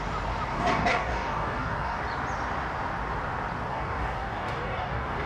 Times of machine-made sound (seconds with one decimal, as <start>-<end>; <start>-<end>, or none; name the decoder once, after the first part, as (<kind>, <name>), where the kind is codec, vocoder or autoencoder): 0.5-2.0 (codec, DAC); 3.7-5.3